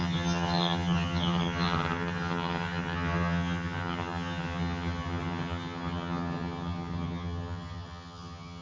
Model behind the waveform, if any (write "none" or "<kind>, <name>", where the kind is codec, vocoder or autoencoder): vocoder, HiFi-GAN